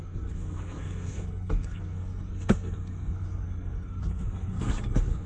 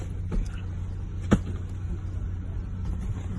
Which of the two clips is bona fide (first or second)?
second